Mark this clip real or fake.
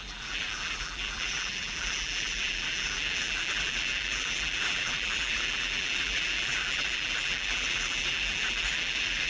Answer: fake